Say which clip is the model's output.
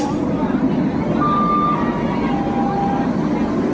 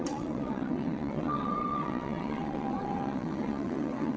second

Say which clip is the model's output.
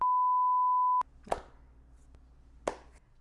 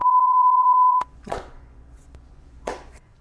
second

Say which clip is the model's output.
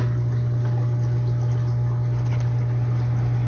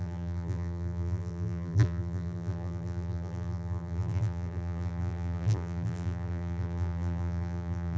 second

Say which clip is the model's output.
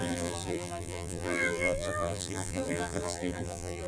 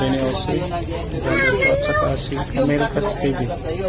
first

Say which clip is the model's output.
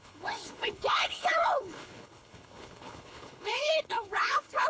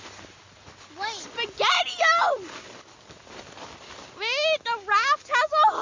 first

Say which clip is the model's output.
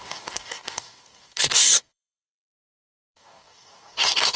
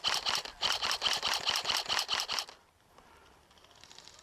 first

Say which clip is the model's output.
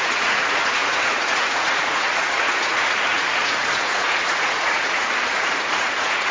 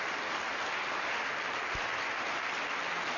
first